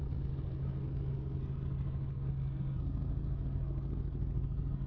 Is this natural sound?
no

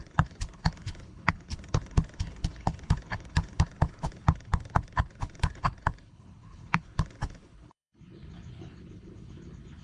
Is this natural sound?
no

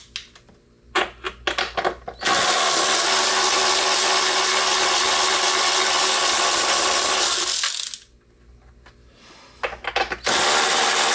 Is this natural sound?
yes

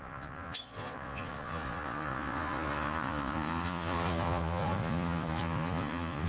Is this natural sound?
no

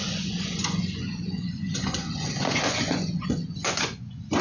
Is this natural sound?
no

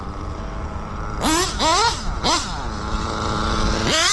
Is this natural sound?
yes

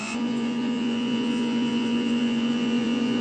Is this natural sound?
no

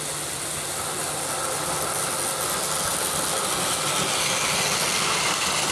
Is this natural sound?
yes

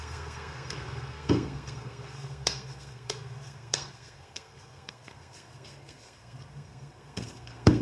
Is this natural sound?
no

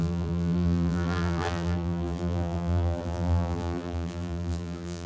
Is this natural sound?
no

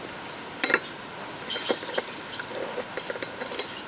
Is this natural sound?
yes